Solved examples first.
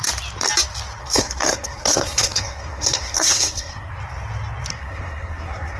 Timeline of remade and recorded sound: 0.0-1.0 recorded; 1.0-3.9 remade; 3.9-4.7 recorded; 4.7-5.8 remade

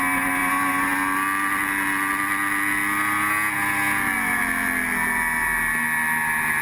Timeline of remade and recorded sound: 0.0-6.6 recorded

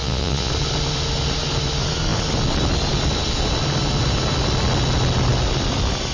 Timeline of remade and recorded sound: 0.0-0.5 remade; 0.5-6.1 recorded

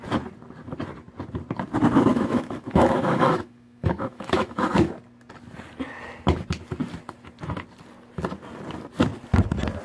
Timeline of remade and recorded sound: 0.0-2.1 recorded; 2.1-4.9 remade; 4.9-9.8 recorded

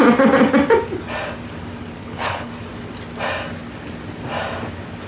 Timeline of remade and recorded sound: 0.0-2.0 recorded; 2.0-2.5 remade; 2.5-5.1 recorded

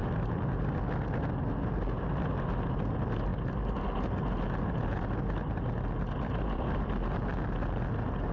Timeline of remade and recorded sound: 0.0-8.3 recorded

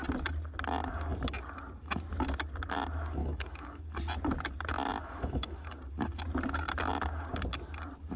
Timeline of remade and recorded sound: 0.0-3.2 recorded; 3.2-3.8 remade; 3.8-5.0 recorded; 5.0-5.6 remade; 5.6-8.2 recorded

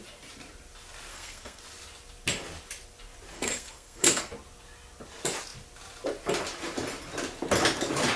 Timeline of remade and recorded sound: 0.0-1.1 recorded; 1.1-1.6 remade; 1.6-3.3 recorded; 3.3-4.3 remade; 4.3-8.2 recorded